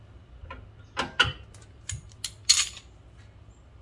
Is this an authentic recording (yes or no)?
yes